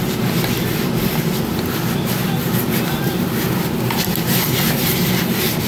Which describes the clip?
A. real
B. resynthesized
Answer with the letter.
A